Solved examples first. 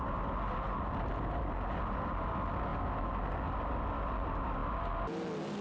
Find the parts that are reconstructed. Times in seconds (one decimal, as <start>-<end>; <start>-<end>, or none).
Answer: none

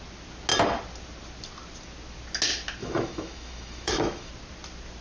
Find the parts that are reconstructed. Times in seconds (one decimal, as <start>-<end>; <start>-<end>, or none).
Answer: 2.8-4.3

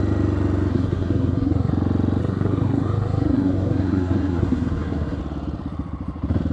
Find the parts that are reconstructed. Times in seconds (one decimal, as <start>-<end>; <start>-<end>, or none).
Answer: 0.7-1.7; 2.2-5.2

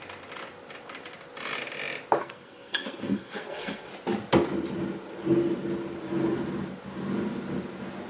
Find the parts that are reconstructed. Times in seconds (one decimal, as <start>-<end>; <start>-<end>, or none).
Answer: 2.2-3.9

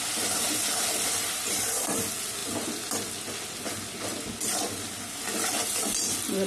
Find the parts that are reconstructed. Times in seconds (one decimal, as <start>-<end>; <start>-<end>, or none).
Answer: none

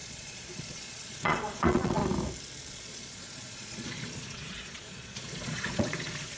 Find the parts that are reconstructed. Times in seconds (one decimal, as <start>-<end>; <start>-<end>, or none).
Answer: 0.0-2.0; 2.7-6.4